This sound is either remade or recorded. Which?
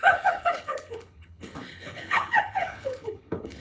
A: remade